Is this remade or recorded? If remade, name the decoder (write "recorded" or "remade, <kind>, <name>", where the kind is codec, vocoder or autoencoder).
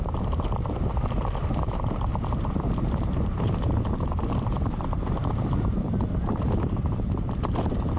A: remade, vocoder, BigVGAN v2